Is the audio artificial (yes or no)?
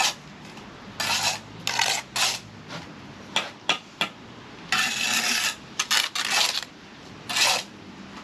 no